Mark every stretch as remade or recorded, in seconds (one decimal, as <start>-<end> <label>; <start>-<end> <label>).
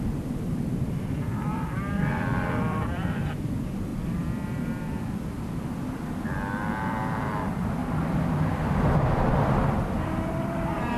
0.0-11.0 remade